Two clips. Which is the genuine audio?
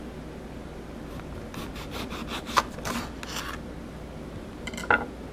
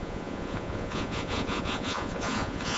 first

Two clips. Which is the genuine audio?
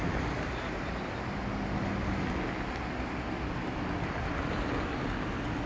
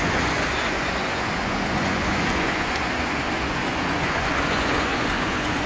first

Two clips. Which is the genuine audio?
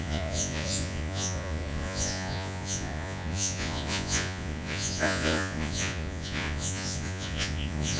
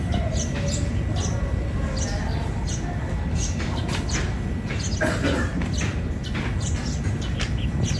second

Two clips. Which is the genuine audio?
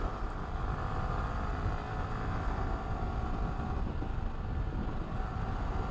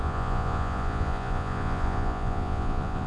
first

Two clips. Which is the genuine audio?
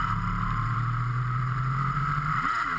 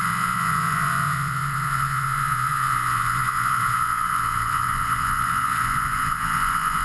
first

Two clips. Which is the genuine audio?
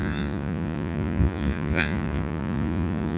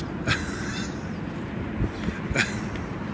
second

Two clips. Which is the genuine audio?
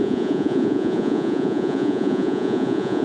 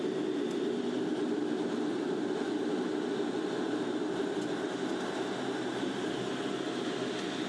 second